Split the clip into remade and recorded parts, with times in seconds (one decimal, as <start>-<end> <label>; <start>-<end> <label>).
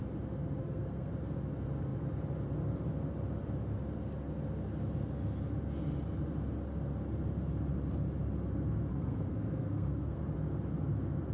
0.0-0.6 recorded; 0.6-1.1 remade; 1.1-8.9 recorded; 8.9-10.2 remade; 10.2-11.3 recorded